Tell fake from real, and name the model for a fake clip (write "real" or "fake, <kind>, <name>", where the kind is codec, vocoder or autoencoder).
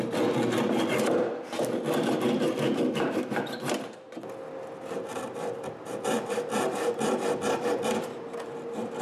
real